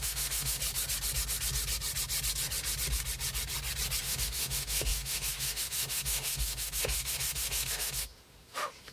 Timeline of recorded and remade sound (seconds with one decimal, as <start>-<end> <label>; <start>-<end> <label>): 0.0-0.6 remade; 0.6-4.0 recorded; 4.0-8.9 remade